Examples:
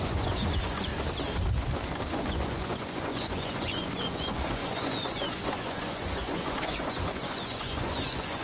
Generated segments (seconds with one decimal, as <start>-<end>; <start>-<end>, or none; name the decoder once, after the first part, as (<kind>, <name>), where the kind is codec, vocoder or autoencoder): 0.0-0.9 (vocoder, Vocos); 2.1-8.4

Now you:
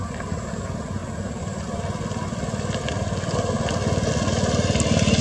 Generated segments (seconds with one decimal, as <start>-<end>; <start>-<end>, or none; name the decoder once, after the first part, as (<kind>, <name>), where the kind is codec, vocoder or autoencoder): none

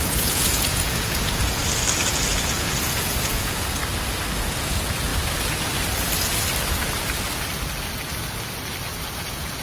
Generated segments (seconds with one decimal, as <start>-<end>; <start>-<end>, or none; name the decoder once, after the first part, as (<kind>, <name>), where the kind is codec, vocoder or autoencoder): 0.0-1.6 (vocoder, Vocos); 2.3-3.8; 4.4-5.1; 9.1-9.6

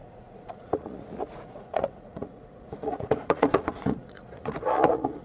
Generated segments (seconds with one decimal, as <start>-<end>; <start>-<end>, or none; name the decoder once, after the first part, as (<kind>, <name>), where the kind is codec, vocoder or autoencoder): 0.0-5.2 (vocoder, Vocos)

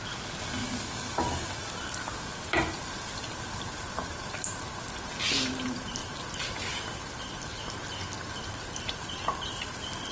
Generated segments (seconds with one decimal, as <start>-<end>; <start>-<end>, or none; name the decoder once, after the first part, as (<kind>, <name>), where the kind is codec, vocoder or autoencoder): none

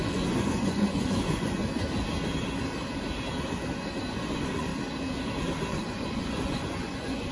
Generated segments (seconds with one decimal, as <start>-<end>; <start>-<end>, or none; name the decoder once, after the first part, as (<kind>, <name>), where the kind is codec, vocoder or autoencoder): 0.0-1.6 (vocoder, Vocos); 4.0-4.7; 5.7-7.3

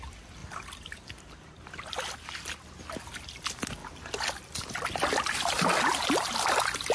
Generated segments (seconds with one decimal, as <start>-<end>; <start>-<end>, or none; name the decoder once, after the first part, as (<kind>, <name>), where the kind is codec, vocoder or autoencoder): none

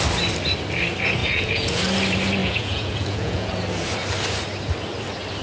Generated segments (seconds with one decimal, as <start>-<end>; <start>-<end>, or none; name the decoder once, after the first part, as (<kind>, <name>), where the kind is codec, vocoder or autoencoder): 1.2-1.8 (vocoder, Vocos); 2.4-3.5